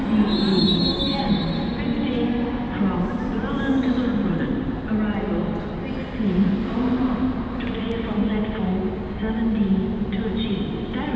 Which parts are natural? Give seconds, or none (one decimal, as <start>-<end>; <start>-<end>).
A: 0.0-0.5; 1.3-11.2